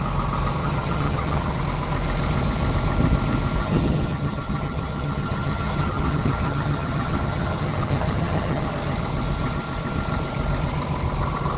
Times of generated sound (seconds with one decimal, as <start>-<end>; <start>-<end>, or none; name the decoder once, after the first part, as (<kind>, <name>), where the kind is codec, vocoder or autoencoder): 0.6-1.6 (vocoder, HiFi-GAN); 3.6-8.7